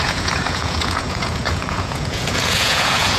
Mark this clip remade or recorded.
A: remade